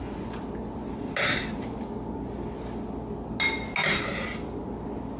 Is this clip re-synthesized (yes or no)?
no